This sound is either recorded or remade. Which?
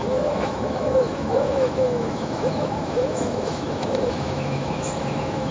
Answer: remade